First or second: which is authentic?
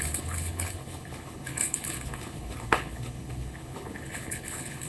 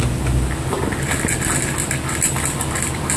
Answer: second